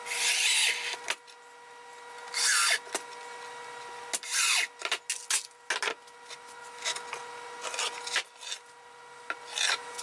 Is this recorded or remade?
recorded